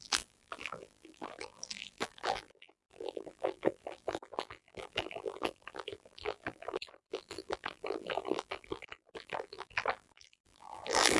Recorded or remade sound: remade